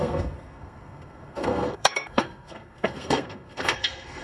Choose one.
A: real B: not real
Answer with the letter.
B